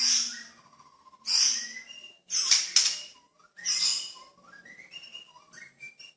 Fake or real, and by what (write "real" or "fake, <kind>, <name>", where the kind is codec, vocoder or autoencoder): real